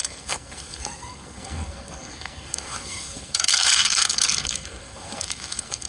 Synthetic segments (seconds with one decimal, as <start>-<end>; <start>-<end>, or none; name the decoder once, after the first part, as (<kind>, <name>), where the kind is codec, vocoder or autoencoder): 0.0-5.9 (codec, SNAC)